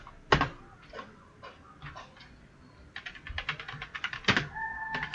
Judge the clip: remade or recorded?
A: recorded